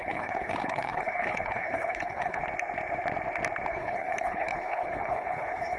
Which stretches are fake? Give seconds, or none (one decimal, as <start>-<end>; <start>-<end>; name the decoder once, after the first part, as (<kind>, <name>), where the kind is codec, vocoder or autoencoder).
0.0-2.4 (codec, HILCodec); 3.7-5.8